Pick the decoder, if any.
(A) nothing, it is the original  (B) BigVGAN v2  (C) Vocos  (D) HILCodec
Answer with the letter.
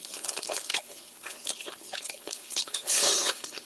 D